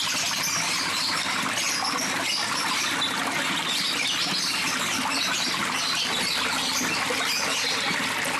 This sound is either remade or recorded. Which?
recorded